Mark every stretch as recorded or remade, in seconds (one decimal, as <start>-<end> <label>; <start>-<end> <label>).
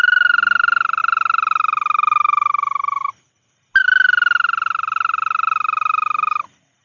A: 0.0-6.8 recorded